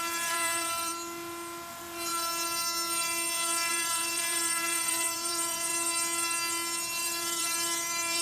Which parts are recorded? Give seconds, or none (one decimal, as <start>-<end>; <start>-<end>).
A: 0.9-1.7; 2.1-3.7; 5.7-7.0